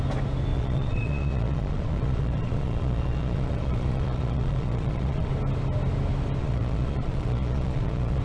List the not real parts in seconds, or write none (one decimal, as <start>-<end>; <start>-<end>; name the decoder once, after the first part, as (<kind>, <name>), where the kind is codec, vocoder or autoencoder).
0.5-5.3 (vocoder, Vocos); 6.4-8.2